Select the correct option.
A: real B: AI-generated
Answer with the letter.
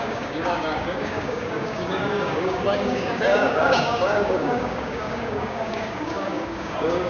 B